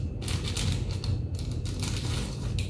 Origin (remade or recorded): recorded